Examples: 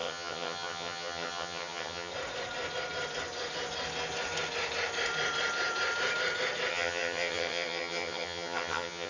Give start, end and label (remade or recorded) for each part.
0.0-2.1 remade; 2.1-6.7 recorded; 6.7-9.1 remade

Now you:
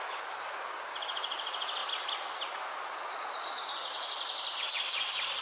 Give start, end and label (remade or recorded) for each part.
0.0-5.4 recorded

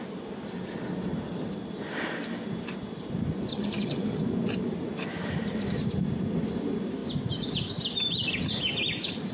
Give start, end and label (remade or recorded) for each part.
0.0-3.5 recorded; 3.5-4.2 remade; 4.2-9.3 recorded

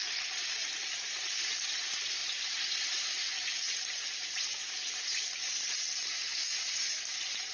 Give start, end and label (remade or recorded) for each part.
0.0-7.5 recorded

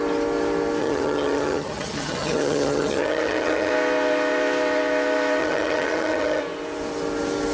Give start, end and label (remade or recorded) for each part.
0.0-0.8 recorded; 0.8-3.7 remade; 3.7-5.4 recorded; 5.4-6.4 remade; 6.4-7.5 recorded

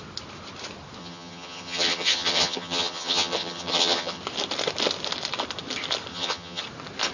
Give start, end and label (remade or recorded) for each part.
0.0-1.0 recorded; 1.0-4.2 remade; 4.2-6.1 recorded; 6.1-6.6 remade; 6.6-7.1 recorded